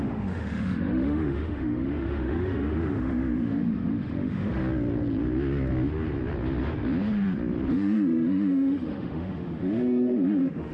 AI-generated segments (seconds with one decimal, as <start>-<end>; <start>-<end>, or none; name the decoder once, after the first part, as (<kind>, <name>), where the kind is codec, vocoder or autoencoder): 0.0-4.6 (autoencoder, DAC-VAE); 7.7-10.7